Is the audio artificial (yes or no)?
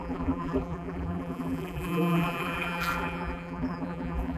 yes